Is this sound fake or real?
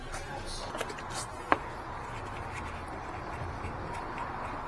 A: real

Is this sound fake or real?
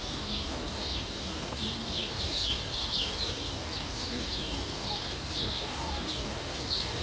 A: fake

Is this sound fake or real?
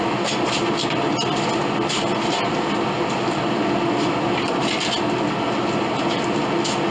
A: real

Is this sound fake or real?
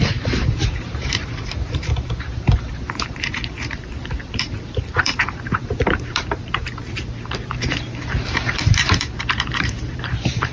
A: fake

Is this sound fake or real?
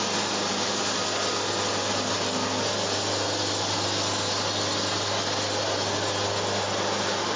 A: real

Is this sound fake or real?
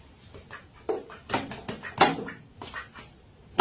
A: real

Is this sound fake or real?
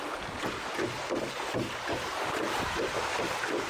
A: real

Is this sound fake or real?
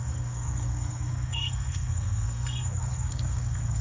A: fake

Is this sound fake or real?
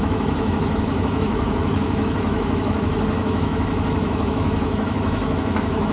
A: fake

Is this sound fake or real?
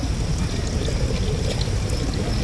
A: real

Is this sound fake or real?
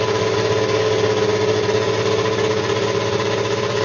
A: real